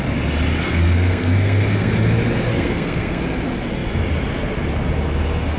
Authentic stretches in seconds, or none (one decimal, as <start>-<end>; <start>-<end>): 0.0-0.6; 1.9-2.5; 3.2-5.6